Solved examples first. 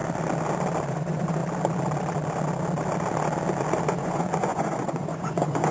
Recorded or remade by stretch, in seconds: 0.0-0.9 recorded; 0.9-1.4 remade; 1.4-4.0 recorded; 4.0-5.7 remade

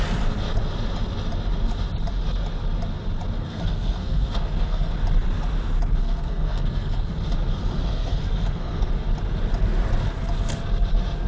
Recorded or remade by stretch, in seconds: 0.0-3.4 recorded; 3.4-4.9 remade; 4.9-6.0 recorded; 6.0-7.1 remade; 7.1-7.5 recorded; 7.5-8.9 remade; 8.9-11.3 recorded